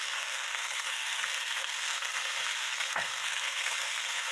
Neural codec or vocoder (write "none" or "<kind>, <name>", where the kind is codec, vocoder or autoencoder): codec, SNAC